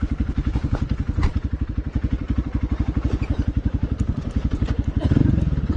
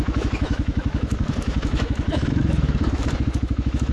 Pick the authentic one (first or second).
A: first